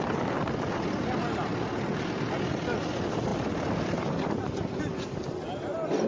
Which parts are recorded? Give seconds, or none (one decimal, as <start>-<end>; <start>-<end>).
0.0-6.1